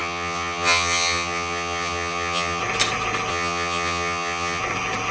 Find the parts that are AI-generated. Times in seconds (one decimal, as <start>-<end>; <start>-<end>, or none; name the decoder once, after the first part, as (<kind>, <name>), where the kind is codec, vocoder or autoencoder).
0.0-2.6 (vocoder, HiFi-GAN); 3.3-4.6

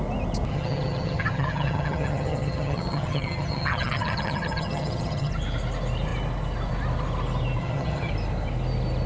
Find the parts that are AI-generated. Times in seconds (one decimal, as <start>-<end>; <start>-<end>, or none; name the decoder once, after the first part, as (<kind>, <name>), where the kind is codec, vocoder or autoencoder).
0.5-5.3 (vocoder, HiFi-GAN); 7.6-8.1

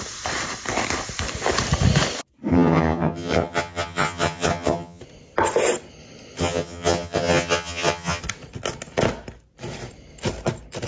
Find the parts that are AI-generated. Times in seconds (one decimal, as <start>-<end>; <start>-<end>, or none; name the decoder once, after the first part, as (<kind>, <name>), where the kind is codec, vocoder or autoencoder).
2.5-5.0 (vocoder, HiFi-GAN); 6.4-8.2

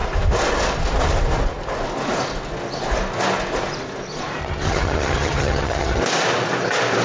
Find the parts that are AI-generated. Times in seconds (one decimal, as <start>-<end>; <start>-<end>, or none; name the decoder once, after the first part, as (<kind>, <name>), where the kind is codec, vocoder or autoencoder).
4.4-6.0 (vocoder, HiFi-GAN)